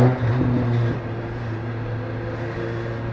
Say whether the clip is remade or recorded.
recorded